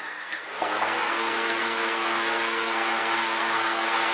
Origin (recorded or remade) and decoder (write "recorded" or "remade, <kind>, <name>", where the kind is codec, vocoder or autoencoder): remade, codec, SNAC